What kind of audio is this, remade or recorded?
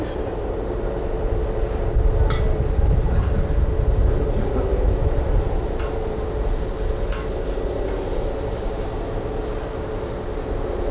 recorded